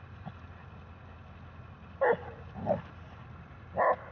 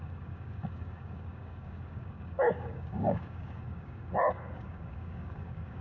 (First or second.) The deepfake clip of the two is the second